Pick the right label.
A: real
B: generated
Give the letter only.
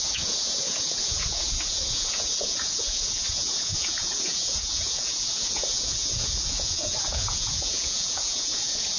B